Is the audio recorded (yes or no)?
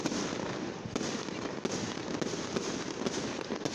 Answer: yes